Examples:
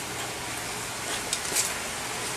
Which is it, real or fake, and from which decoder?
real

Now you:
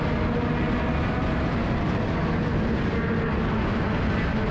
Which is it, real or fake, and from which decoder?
real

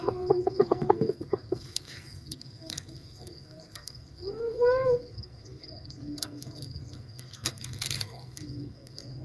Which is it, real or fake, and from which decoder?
fake, codec, SNAC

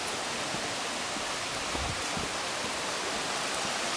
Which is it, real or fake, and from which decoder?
real